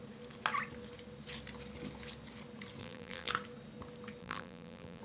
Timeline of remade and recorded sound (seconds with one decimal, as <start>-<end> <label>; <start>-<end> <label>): 0.0-2.8 recorded; 2.8-3.3 remade; 3.3-4.2 recorded; 4.2-5.0 remade

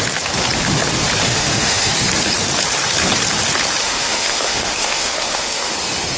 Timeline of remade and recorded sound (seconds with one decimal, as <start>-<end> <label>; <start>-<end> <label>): 0.0-1.2 recorded; 1.2-1.9 remade; 1.9-3.8 recorded; 3.8-5.7 remade; 5.7-6.2 recorded